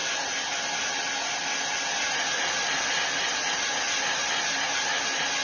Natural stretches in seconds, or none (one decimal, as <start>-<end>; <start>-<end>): 0.0-5.4